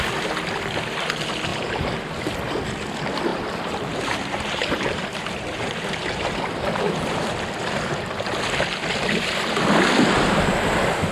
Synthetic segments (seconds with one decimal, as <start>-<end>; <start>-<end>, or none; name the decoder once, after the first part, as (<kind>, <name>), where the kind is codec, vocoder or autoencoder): 1.5-2.2 (vocoder, BigVGAN v2); 3.3-6.4